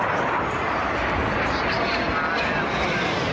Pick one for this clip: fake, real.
real